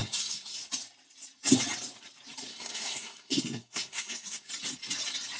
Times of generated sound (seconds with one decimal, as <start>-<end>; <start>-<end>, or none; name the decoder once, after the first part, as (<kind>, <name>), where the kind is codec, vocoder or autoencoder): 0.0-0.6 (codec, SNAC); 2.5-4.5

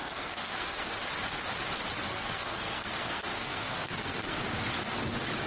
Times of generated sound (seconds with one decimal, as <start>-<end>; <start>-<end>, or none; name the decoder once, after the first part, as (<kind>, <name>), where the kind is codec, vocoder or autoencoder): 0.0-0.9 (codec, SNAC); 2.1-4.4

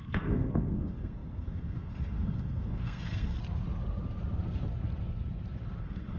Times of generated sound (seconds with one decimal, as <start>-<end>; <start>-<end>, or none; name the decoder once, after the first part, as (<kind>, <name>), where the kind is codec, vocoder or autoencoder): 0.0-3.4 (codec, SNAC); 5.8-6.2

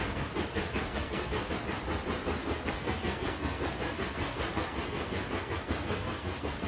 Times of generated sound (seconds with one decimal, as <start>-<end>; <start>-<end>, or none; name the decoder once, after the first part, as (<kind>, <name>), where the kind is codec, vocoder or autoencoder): 0.0-1.5 (codec, SNAC); 2.4-6.7

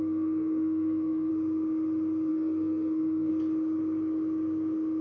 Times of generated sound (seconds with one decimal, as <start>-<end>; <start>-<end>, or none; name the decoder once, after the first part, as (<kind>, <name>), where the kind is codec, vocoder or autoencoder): 0.0-1.3 (codec, SNAC); 2.3-3.3